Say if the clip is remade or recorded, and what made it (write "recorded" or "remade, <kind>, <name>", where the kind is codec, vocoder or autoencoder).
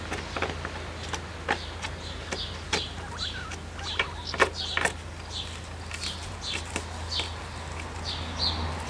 recorded